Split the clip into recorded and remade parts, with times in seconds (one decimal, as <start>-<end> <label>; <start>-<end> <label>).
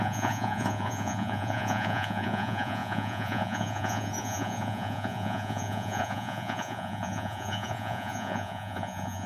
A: 0.0-9.3 remade